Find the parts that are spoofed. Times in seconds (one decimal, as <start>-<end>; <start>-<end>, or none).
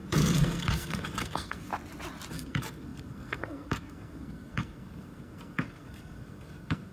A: 0.0-1.7; 2.3-6.9